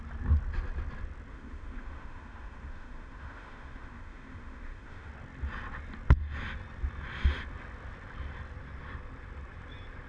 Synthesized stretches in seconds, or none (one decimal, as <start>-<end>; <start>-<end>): 1.3-5.1